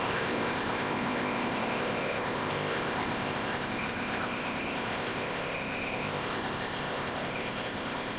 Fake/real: fake